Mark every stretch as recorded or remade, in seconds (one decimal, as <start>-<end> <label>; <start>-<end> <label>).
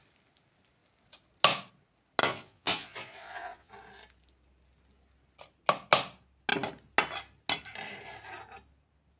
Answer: 0.0-2.2 recorded; 2.2-3.7 remade; 3.7-9.2 recorded